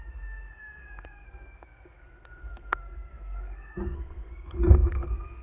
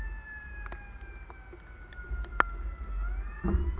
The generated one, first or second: first